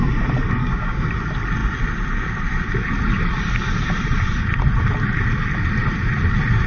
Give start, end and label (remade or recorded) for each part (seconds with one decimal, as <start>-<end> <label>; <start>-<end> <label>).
0.0-0.6 recorded; 0.6-1.1 remade; 1.1-6.7 recorded